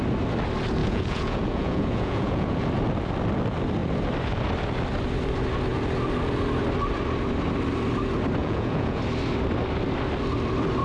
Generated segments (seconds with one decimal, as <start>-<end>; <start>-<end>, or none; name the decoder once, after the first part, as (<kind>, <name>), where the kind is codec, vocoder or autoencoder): 0.8-2.6 (vocoder, Vocos); 8.4-9.0